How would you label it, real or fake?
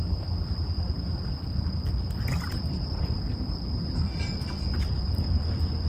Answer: fake